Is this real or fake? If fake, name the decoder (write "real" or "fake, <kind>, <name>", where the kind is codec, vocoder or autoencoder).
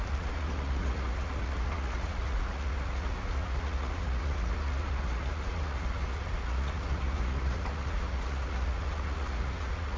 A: fake, vocoder, Vocos